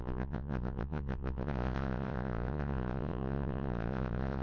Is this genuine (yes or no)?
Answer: no